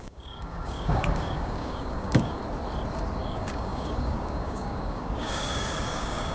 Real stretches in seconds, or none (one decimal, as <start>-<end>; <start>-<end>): 2.4-3.2